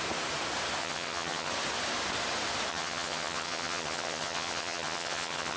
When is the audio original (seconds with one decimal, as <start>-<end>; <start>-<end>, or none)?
0.0-0.8; 1.5-2.7